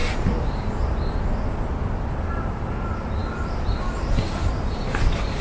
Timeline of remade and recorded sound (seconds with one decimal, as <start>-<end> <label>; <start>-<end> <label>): 0.0-5.4 recorded